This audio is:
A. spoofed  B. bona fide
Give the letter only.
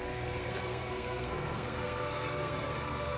A